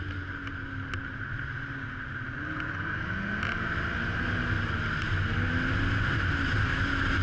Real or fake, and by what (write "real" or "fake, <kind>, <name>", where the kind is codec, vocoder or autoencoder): real